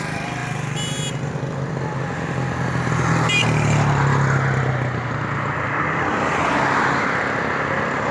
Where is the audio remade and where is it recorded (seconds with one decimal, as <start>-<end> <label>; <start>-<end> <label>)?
0.0-8.1 recorded